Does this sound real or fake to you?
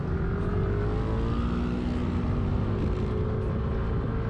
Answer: real